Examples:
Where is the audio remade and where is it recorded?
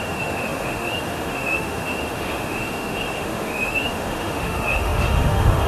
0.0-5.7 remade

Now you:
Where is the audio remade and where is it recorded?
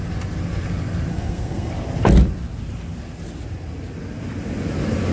0.0-1.1 recorded; 1.1-1.7 remade; 1.7-5.1 recorded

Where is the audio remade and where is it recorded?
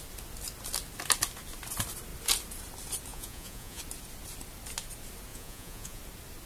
0.0-3.1 recorded; 3.1-3.8 remade; 3.8-5.3 recorded; 5.3-6.0 remade; 6.0-6.5 recorded